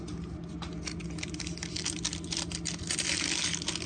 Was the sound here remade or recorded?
recorded